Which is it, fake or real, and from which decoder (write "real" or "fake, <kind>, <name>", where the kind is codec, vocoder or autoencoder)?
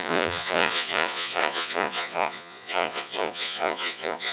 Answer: fake, vocoder, Vocos